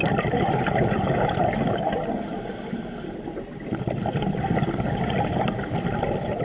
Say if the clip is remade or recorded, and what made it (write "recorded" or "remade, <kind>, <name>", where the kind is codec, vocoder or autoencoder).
recorded